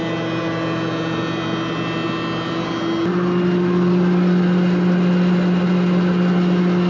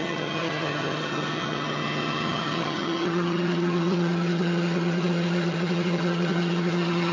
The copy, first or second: second